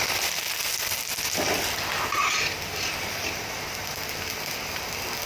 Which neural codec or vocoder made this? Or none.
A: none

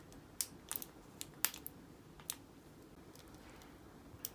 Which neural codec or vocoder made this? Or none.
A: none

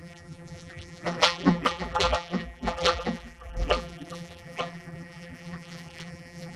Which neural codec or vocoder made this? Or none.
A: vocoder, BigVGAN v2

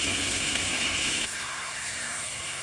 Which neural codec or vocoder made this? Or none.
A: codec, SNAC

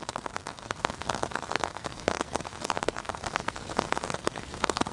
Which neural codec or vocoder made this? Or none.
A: codec, SNAC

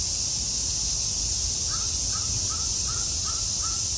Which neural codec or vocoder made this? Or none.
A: none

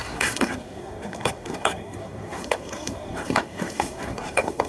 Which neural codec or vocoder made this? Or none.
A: codec, SNAC